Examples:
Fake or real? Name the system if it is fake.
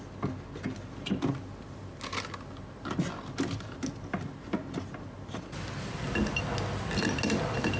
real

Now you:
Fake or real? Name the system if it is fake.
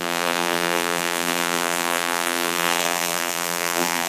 fake, vocoder, BigVGAN v2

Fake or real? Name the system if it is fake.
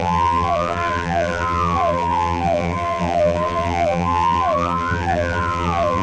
fake, vocoder, BigVGAN v2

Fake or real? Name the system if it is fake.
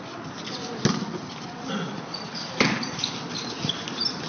real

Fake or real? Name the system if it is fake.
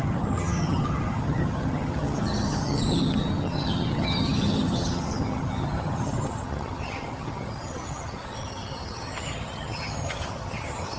fake, vocoder, HiFi-GAN